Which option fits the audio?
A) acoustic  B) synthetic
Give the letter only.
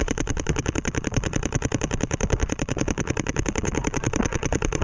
B